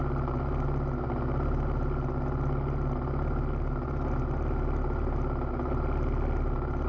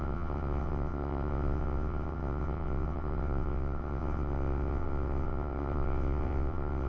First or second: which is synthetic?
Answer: second